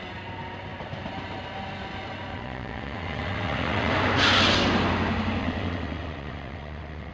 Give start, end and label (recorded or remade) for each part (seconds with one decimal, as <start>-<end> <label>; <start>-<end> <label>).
0.0-2.3 recorded; 2.3-3.9 remade; 3.9-5.4 recorded; 5.4-7.1 remade